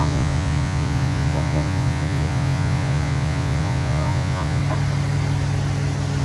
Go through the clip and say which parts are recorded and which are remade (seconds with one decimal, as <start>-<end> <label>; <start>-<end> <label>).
0.0-4.6 remade; 4.6-6.2 recorded